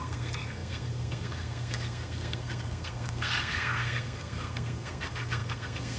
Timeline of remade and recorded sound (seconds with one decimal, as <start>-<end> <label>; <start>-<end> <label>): 0.0-6.0 remade